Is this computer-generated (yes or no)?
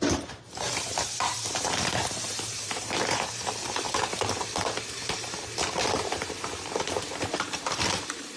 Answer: yes